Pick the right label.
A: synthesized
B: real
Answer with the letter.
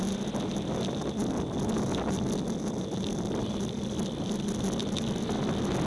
B